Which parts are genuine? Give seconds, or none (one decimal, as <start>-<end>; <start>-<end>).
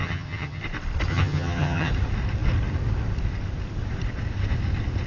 0.6-1.1; 1.9-5.1